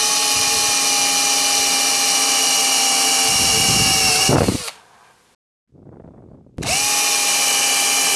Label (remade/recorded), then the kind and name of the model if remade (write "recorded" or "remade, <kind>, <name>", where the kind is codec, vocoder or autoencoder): recorded